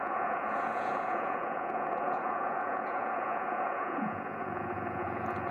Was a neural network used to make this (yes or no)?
yes